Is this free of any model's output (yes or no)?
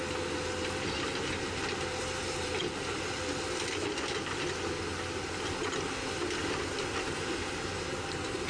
yes